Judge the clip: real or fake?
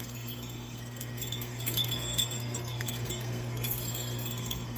fake